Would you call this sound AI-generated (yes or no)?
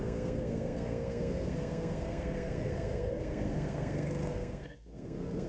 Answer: yes